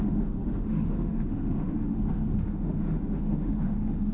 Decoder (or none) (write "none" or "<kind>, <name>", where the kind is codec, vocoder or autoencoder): autoencoder, DAC-VAE